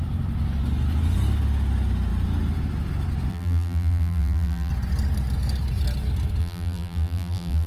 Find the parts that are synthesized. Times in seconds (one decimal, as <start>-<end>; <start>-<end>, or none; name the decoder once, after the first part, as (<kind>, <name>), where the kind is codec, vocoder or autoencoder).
3.3-4.7 (vocoder, BigVGAN v2); 6.4-7.7